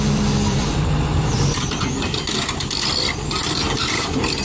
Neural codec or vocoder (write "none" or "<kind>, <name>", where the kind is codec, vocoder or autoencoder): vocoder, BigVGAN v2